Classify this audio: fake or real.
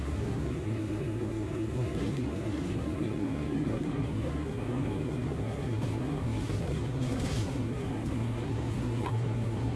fake